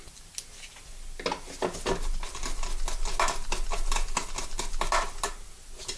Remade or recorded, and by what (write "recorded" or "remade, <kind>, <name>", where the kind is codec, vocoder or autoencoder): recorded